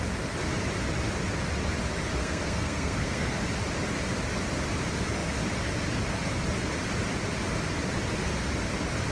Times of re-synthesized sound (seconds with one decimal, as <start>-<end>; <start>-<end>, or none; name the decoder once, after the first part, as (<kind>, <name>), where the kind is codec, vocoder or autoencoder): 2.2-3.4 (codec, SNAC)